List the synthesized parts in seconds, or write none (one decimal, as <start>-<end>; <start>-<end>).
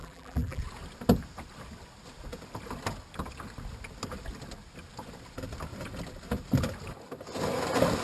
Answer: 0.0-0.6